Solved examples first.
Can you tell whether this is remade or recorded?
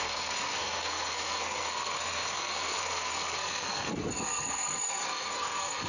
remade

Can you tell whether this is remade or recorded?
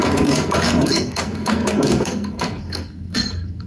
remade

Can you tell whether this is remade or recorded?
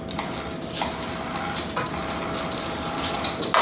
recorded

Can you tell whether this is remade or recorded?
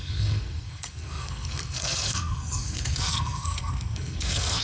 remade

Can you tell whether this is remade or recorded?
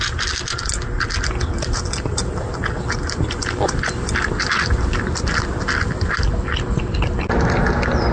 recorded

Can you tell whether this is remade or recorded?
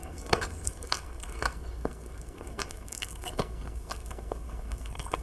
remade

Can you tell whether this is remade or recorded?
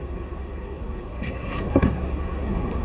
remade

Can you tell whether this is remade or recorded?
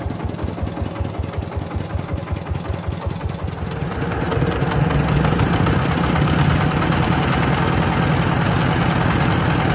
recorded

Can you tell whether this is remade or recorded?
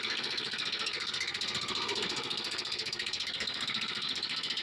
remade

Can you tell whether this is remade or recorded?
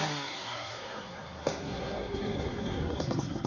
remade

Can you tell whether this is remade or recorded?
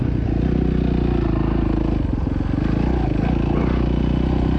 recorded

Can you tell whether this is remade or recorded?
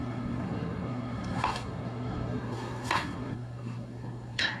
remade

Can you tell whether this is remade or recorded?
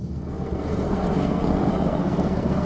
remade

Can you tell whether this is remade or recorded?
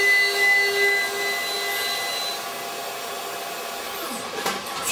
recorded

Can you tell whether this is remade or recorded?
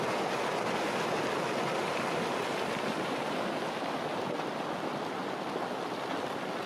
recorded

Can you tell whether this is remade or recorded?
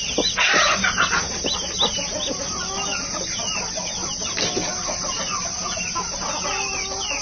recorded